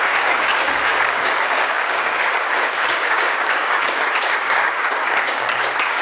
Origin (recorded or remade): remade